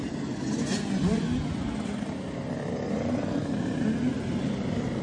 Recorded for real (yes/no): yes